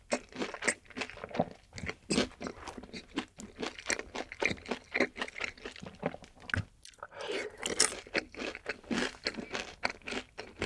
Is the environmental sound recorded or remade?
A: recorded